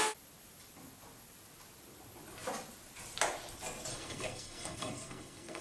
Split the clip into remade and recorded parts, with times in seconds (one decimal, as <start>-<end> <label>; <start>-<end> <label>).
0.0-3.9 recorded; 3.9-5.6 remade